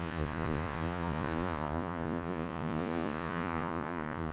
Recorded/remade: remade